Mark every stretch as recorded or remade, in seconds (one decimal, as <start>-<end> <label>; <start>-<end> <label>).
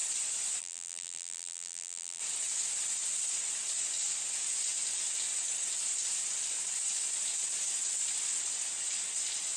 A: 0.0-0.6 recorded; 0.6-2.2 remade; 2.2-9.6 recorded